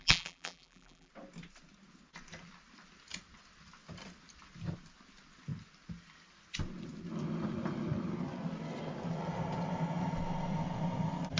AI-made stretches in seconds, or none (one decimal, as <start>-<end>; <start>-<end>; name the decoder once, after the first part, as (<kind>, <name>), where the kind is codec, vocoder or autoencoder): 0.0-1.1 (vocoder, BigVGAN v2)

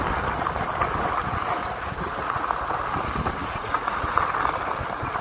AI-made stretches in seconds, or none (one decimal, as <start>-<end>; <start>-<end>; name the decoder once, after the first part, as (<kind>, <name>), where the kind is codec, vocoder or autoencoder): 1.6-2.5 (vocoder, Vocos); 3.4-4.2

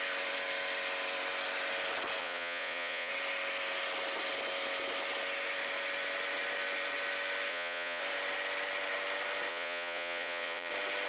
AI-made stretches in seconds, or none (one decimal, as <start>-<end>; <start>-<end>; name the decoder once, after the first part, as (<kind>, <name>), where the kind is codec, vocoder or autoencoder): 2.2-3.1 (vocoder, Vocos); 7.5-8.0; 9.5-10.7

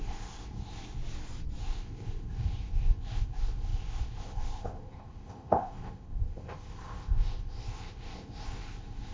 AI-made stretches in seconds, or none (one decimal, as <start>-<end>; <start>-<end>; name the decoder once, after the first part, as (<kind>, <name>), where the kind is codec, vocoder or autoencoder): 0.0-1.0 (codec, ZipCodec); 1.6-9.1

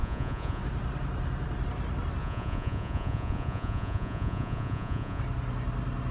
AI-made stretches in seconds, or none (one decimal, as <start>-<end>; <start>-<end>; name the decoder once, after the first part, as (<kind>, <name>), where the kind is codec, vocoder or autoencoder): 0.0-0.6 (vocoder, Vocos); 2.2-5.2